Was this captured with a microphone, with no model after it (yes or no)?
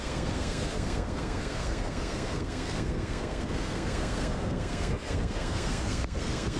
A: no